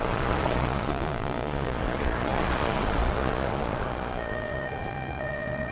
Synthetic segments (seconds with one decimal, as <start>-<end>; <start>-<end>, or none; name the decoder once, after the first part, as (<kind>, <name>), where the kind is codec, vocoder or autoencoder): 0.0-5.7 (vocoder, Vocos)

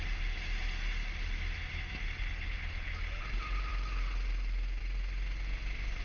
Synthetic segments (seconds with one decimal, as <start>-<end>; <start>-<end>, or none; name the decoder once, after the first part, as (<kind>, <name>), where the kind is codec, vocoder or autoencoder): none